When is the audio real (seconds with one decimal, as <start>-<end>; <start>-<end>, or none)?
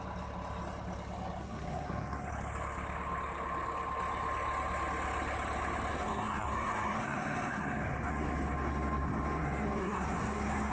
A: 0.0-1.4; 2.3-5.9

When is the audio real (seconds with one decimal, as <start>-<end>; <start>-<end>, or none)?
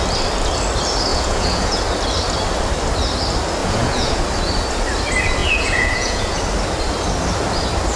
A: 0.0-1.1; 1.8-3.6; 4.2-5.4; 6.4-8.0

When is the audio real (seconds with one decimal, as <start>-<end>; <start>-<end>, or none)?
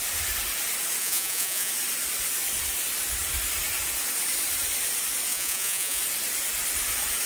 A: 0.0-1.0; 1.7-5.3; 6.0-7.3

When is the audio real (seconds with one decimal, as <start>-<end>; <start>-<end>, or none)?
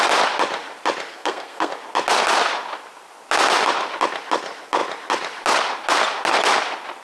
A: 0.0-1.1; 1.7-7.0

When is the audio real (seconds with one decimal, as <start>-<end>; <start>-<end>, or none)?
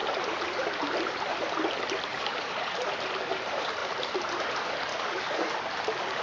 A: 0.0-2.1; 2.7-4.9; 5.5-6.2